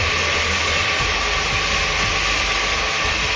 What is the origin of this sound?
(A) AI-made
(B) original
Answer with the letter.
B